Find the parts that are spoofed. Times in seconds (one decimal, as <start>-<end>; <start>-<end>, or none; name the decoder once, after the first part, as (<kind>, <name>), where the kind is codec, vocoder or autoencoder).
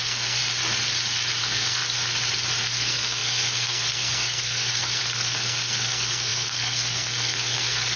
0.0-0.4 (codec, SNAC); 1.4-1.8; 2.6-8.0